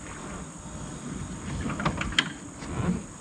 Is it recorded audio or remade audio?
recorded